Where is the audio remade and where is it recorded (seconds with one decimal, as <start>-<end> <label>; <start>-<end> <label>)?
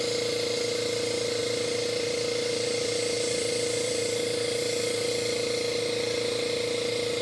0.0-1.4 recorded; 1.4-5.1 remade; 5.1-7.2 recorded